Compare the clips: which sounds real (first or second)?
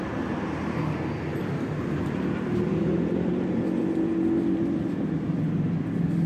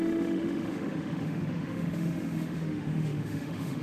first